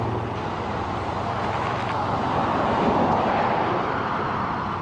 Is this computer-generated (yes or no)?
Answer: no